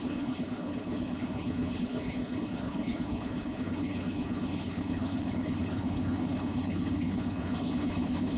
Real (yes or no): no